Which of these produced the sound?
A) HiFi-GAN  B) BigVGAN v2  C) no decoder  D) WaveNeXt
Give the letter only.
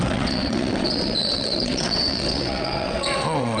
D